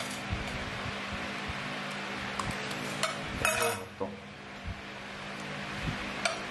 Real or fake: real